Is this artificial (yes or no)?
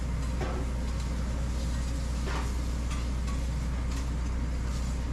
no